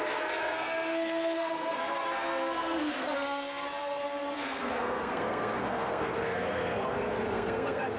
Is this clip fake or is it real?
fake